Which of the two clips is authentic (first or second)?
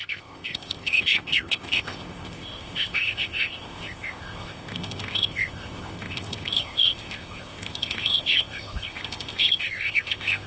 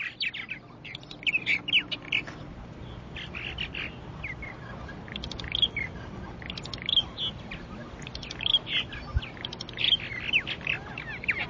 second